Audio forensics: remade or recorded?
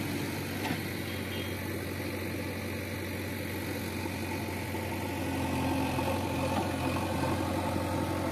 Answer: recorded